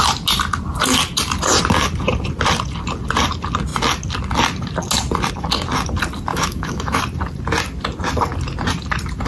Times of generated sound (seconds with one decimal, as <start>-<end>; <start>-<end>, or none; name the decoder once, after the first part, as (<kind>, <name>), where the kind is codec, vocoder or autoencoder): 6.3-7.0 (autoencoder, DAC-VAE)